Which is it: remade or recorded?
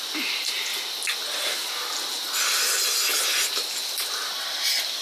recorded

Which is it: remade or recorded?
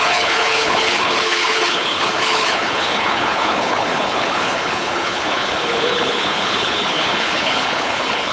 remade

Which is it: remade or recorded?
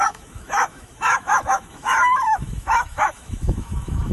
remade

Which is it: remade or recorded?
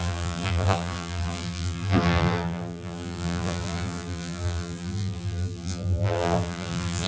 remade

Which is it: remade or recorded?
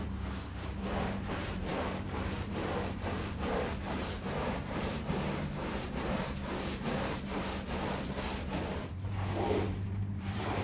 remade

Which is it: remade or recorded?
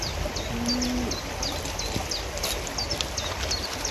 recorded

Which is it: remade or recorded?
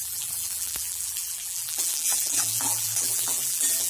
remade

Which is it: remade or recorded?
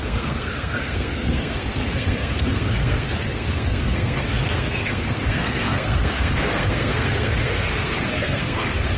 remade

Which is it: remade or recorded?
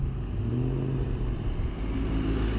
recorded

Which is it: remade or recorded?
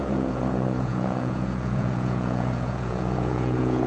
remade